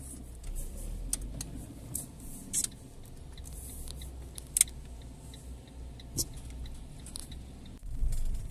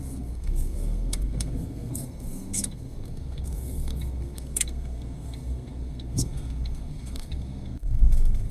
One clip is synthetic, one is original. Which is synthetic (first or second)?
second